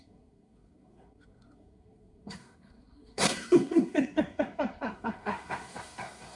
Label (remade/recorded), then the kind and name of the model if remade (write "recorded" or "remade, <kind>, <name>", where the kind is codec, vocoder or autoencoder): remade, codec, SNAC